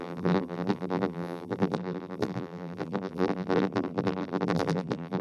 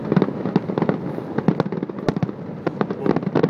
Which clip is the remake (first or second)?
first